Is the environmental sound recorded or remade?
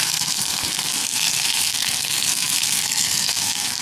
remade